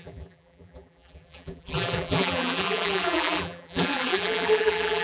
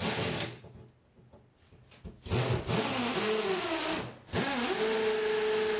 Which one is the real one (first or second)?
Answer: second